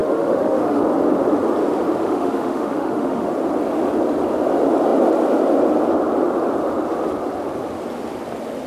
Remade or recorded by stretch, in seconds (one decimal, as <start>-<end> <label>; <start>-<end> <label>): 0.0-0.8 remade; 0.8-2.0 recorded; 2.0-3.3 remade; 3.3-8.7 recorded